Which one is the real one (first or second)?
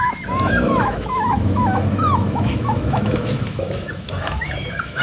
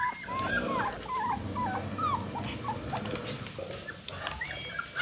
second